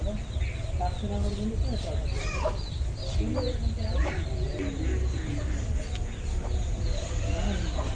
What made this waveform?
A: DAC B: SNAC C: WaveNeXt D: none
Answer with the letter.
D